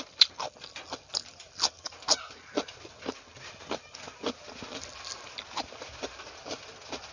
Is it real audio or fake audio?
real